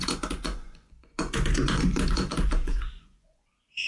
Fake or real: fake